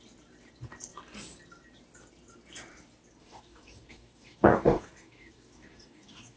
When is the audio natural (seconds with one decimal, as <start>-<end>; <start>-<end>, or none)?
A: 0.0-3.2